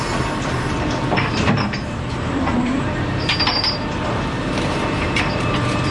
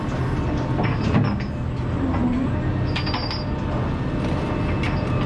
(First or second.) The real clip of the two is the second